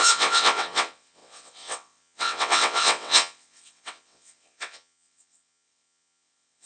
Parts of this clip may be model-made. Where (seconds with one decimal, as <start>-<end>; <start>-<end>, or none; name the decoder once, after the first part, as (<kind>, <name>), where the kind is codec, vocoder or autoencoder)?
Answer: 0.0-6.7 (vocoder, WaveNeXt)